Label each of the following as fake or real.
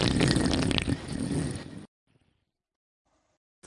real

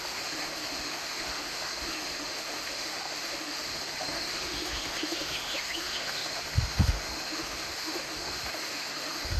fake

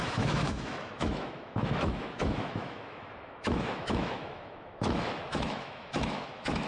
fake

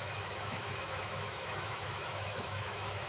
fake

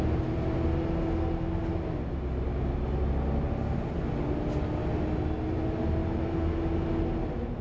real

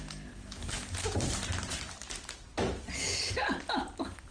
real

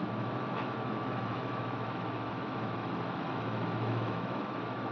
fake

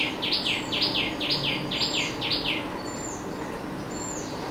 real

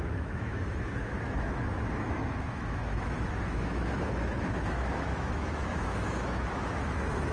fake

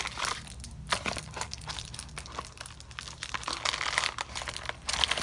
real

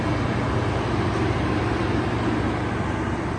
real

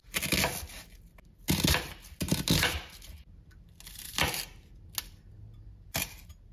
real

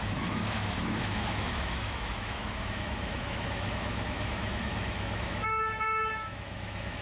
fake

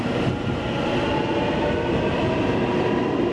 real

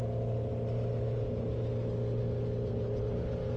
real